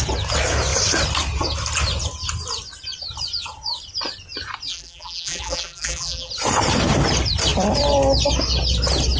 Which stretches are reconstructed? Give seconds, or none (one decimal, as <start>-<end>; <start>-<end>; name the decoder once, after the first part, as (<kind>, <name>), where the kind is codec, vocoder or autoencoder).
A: 4.7-6.3 (vocoder, BigVGAN v2)